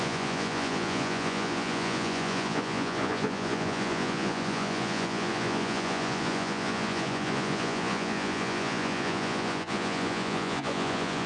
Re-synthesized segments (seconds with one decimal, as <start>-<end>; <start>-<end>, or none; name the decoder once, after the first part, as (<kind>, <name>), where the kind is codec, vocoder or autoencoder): 0.0-11.3 (vocoder, Vocos)